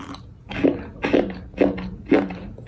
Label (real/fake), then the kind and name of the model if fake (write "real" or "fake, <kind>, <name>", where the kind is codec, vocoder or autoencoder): real